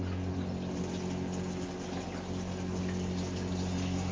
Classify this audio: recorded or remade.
recorded